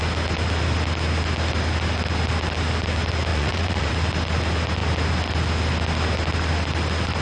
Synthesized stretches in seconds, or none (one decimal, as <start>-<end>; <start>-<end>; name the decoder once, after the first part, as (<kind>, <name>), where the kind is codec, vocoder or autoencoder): 3.3-3.9 (vocoder, Vocos)